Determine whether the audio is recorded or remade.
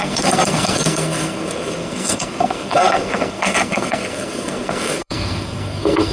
remade